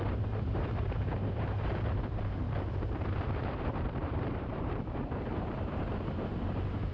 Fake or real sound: fake